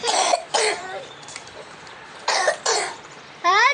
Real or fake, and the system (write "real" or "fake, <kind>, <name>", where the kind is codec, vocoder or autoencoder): fake, vocoder, BigVGAN v2